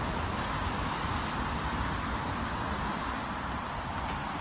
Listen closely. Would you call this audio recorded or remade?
recorded